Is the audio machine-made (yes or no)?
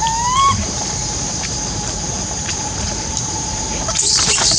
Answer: yes